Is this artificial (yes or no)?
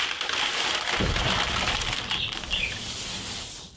yes